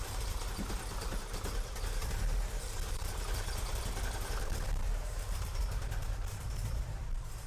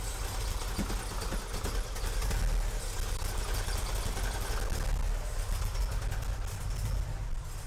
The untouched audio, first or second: second